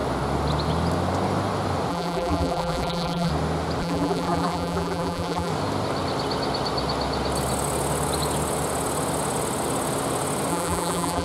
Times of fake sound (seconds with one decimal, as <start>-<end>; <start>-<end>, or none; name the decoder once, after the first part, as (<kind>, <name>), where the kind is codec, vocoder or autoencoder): 1.9-3.3 (vocoder, BigVGAN v2); 3.8-5.5; 10.5-11.2